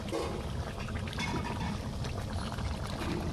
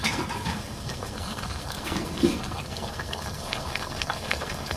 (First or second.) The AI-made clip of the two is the second